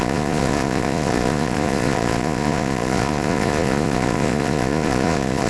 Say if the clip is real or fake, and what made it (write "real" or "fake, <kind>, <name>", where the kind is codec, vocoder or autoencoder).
fake, vocoder, Vocos